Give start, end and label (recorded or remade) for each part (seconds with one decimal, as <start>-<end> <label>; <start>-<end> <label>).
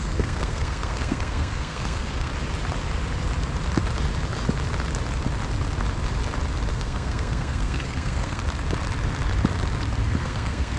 0.0-2.3 remade; 2.3-6.7 recorded; 6.7-8.4 remade; 8.4-10.2 recorded; 10.2-10.8 remade